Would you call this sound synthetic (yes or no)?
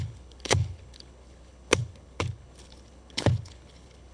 yes